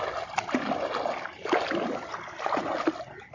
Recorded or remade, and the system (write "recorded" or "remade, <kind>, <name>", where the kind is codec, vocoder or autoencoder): recorded